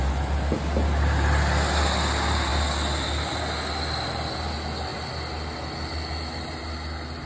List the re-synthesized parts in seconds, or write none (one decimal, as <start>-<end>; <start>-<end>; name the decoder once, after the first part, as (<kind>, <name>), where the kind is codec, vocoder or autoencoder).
none